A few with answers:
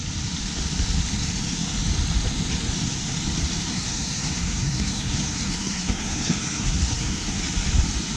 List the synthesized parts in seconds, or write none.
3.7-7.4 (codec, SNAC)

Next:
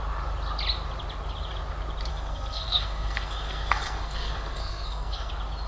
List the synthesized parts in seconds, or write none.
2.1-5.3 (codec, SNAC)

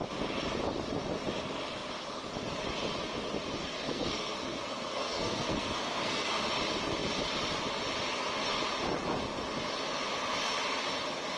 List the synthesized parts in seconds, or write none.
3.6-6.5 (codec, SNAC)

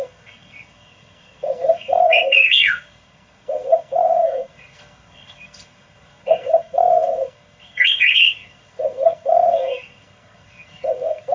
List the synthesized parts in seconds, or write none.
0.0-11.3 (codec, SNAC)

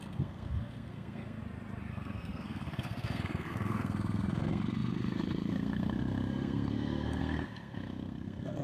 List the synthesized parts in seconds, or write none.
0.0-1.4 (codec, SNAC); 1.9-8.6

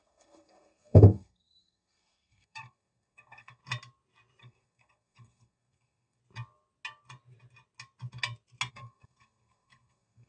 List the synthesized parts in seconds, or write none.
0.0-3.6 (codec, SNAC); 4.4-6.2; 8.7-10.3

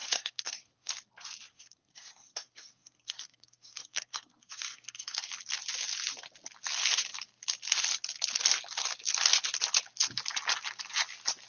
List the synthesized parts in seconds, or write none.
0.0-0.9 (codec, SNAC); 1.5-5.3